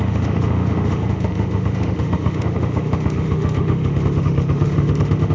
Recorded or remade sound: remade